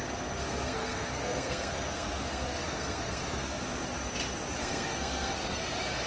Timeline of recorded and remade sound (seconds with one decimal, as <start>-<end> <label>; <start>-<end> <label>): 0.0-0.4 recorded; 0.4-3.6 remade; 3.6-4.6 recorded; 4.6-5.6 remade; 5.6-6.1 recorded